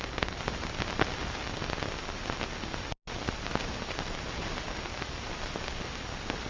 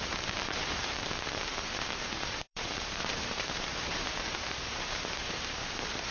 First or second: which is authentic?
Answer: first